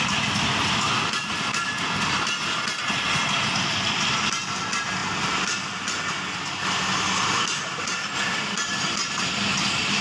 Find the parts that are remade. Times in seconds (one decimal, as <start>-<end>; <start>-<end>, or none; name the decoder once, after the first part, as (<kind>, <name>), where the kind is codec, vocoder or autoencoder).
none